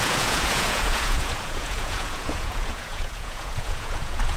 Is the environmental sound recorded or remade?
remade